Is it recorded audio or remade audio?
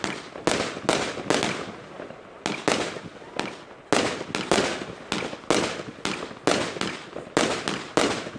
recorded